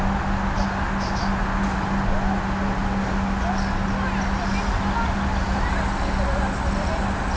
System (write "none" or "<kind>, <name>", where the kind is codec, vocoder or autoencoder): none